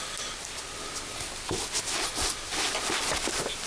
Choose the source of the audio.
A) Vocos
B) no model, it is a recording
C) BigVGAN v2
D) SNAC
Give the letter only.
B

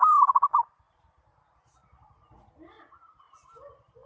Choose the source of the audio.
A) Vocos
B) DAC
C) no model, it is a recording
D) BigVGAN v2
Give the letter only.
C